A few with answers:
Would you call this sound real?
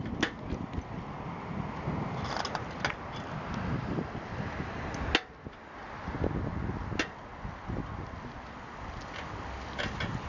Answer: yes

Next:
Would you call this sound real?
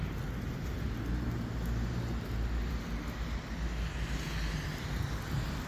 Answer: yes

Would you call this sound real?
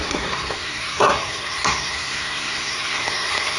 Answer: no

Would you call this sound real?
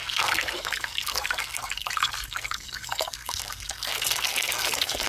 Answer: no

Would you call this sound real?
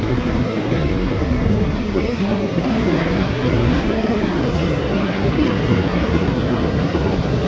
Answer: no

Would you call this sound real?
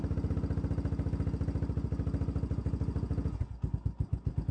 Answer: yes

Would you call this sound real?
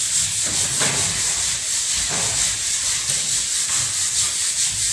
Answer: yes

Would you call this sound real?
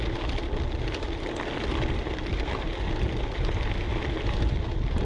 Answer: yes